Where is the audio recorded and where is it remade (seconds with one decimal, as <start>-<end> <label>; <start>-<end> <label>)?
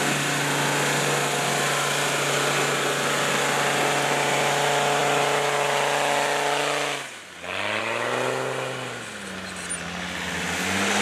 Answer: 0.0-11.0 recorded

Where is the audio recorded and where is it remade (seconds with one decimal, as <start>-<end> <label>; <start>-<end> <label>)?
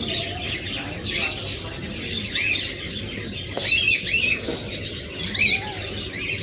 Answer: 0.0-6.4 recorded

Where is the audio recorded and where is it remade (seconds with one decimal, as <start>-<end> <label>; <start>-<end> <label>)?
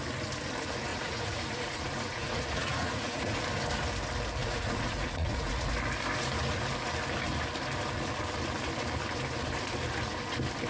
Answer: 0.0-0.9 recorded; 0.9-3.4 remade; 3.4-4.4 recorded; 4.4-5.7 remade; 5.7-10.7 recorded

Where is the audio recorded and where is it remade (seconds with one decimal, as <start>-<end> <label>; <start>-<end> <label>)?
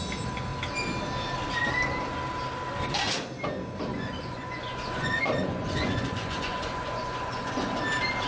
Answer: 0.0-3.9 recorded; 3.9-7.8 remade; 7.8-8.3 recorded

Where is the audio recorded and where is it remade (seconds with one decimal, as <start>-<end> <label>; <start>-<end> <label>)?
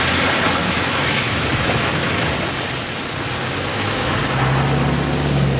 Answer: 0.0-0.6 recorded; 0.6-2.3 remade; 2.3-3.7 recorded; 3.7-4.2 remade; 4.2-5.6 recorded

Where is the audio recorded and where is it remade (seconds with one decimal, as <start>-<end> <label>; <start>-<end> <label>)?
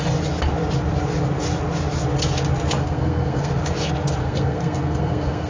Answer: 0.0-2.8 recorded; 2.8-3.6 remade; 3.6-4.2 recorded; 4.2-5.5 remade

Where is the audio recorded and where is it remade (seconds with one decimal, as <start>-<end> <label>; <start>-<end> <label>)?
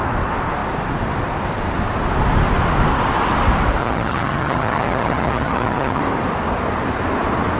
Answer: 0.0-3.8 recorded; 3.8-6.0 remade; 6.0-7.6 recorded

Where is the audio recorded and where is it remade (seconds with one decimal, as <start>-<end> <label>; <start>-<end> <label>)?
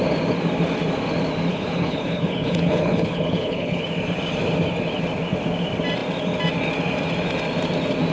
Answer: 0.0-1.5 recorded; 1.5-3.8 remade; 3.8-8.1 recorded